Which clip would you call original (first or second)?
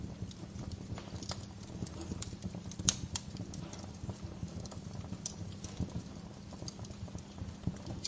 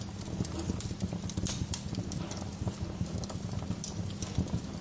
second